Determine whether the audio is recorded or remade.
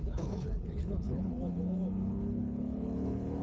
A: remade